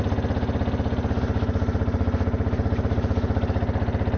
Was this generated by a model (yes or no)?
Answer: no